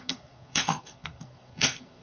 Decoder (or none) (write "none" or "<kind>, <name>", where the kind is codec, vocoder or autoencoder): codec, SNAC